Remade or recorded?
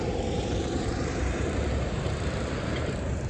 remade